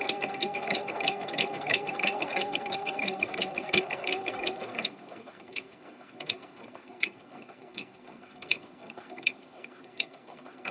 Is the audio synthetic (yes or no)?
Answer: yes